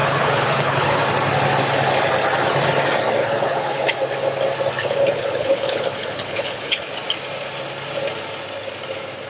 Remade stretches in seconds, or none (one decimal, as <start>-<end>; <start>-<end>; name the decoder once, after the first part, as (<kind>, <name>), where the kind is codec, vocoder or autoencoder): 0.0-1.0 (codec, HILCodec); 3.2-3.9; 4.8-6.9